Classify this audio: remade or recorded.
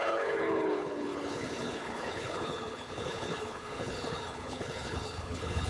remade